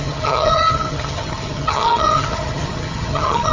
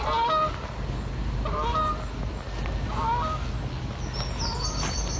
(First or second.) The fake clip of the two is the first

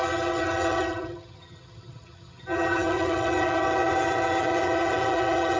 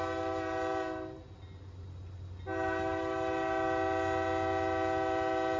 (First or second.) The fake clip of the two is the first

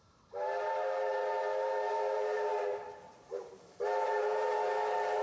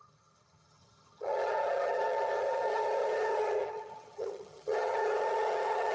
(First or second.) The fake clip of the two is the second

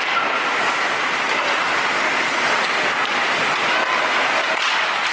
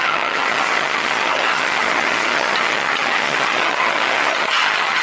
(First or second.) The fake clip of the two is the second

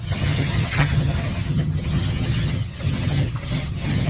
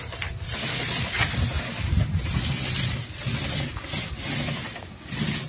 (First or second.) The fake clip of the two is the first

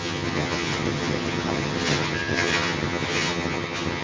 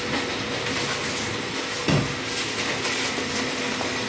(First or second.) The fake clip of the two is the first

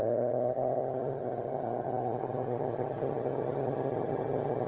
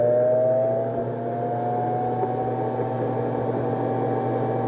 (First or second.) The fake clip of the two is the first